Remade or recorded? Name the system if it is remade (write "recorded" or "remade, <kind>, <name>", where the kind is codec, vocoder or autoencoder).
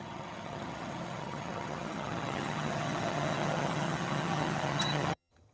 remade, vocoder, HiFi-GAN